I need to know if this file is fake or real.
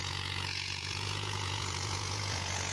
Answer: fake